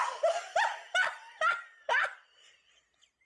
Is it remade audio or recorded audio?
recorded